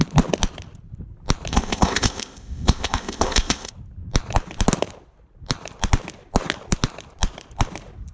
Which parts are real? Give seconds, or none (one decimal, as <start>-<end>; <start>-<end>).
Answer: 0.0-1.5; 3.7-8.1